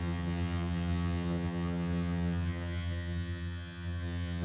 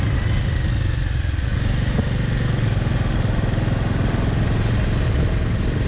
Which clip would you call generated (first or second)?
first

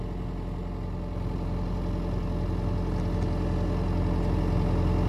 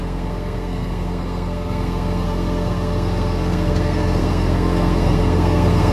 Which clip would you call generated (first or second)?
second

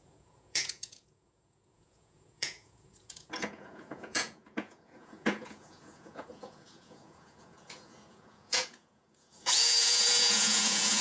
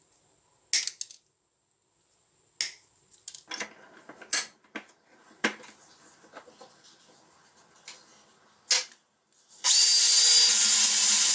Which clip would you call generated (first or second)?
first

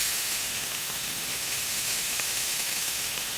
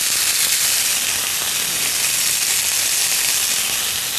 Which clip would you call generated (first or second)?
first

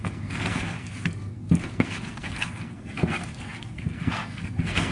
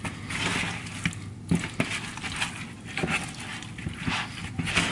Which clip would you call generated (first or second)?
first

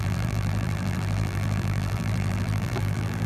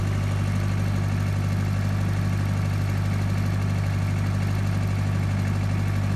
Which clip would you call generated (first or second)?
first